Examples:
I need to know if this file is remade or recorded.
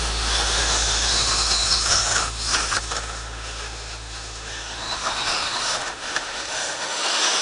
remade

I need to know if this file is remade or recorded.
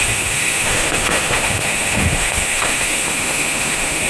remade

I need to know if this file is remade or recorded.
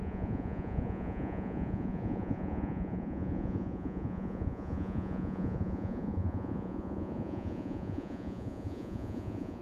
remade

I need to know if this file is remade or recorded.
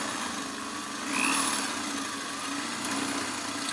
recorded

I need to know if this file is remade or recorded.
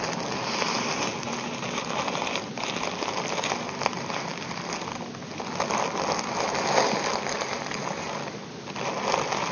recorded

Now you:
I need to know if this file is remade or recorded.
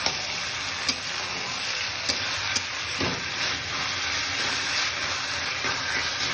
recorded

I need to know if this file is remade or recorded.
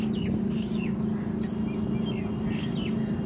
recorded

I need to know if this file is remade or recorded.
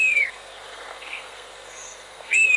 remade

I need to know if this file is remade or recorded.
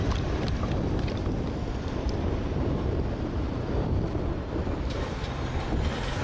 remade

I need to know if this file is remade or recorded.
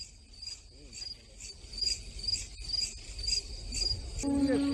recorded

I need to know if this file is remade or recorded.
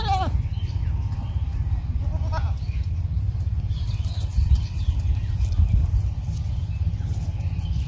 recorded